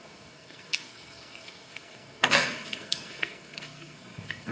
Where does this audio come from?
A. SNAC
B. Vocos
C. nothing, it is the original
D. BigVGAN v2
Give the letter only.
A